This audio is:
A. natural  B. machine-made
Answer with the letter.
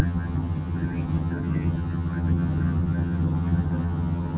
B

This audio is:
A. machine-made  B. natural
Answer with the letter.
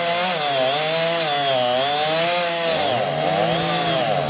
B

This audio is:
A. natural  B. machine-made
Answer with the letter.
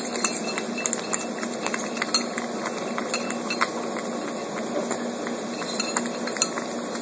A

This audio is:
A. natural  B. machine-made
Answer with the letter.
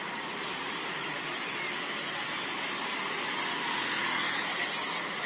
A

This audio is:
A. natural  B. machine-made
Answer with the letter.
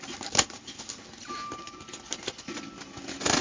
A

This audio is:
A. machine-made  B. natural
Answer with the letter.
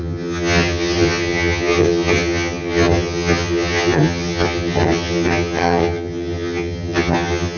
A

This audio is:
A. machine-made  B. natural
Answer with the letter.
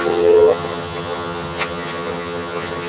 A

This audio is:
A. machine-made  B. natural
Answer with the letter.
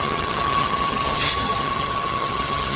A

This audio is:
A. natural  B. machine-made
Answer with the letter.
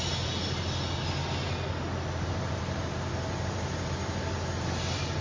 A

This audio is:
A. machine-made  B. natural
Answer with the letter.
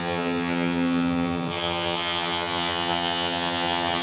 A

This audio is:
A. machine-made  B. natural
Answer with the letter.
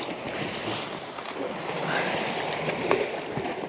B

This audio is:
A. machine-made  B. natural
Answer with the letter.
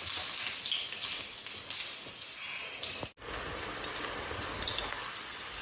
B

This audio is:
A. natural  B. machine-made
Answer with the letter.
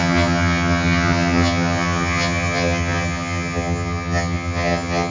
B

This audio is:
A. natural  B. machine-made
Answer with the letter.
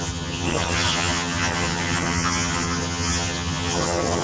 B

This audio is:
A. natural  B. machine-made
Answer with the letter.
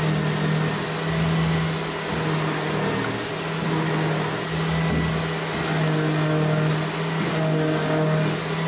A